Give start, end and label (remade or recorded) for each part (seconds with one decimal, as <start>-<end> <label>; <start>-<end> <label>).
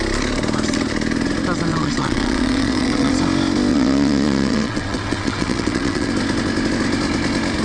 0.0-1.7 recorded; 1.7-3.1 remade; 3.1-3.7 recorded; 3.7-6.1 remade; 6.1-7.6 recorded